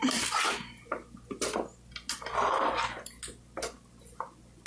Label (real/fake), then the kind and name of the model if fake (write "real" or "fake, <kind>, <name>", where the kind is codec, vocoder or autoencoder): real